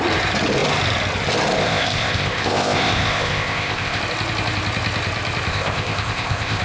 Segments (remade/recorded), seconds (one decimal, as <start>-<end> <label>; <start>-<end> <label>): 0.0-1.6 recorded; 1.6-4.0 remade; 4.0-5.5 recorded; 5.5-6.6 remade